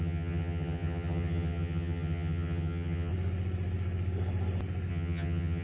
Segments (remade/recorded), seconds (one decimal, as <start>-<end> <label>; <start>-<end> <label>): 0.0-3.1 remade; 3.1-4.9 recorded; 4.9-5.6 remade